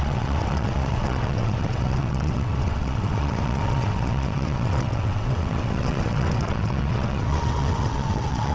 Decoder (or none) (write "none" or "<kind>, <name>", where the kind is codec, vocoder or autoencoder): vocoder, WaveNeXt